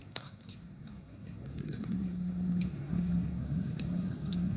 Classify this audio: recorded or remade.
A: remade